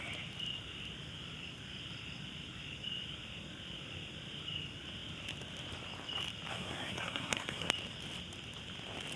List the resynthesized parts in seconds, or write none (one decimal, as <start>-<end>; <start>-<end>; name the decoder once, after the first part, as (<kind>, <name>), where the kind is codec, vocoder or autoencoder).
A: 6.5-7.7 (codec, SNAC)